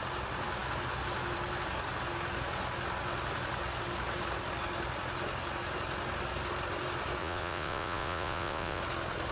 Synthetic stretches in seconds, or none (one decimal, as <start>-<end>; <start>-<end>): 7.2-8.8